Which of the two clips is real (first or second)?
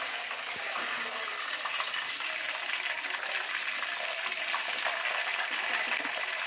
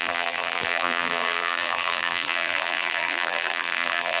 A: first